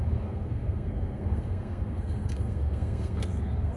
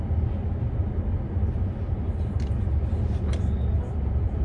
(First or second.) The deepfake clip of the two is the first